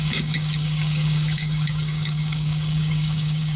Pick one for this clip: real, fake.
fake